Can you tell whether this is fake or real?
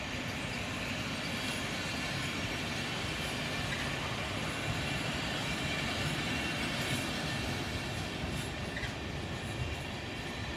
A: real